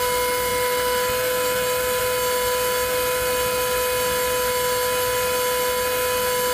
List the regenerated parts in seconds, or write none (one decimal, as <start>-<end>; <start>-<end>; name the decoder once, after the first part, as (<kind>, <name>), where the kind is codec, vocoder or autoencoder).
none